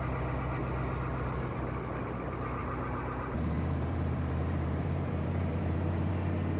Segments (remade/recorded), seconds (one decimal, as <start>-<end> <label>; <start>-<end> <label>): 0.0-2.6 recorded; 2.6-6.1 remade; 6.1-6.6 recorded